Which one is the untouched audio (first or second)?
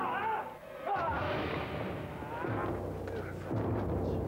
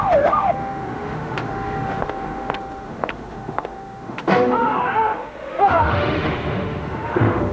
first